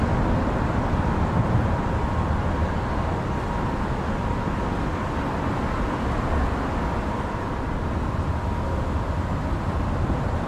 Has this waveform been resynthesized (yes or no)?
no